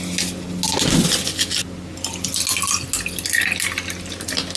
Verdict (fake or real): real